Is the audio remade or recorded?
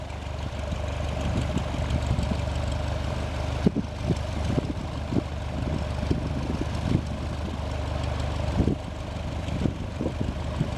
recorded